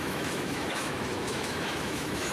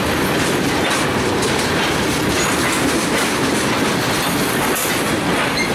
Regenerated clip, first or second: first